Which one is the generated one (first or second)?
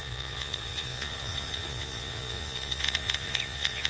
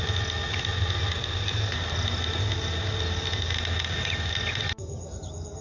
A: first